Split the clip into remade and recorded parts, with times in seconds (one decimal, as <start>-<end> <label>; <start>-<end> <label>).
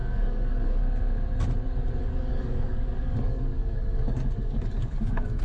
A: 0.0-0.8 remade; 0.8-2.0 recorded; 2.0-5.4 remade